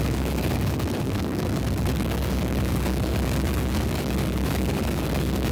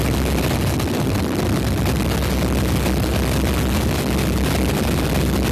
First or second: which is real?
second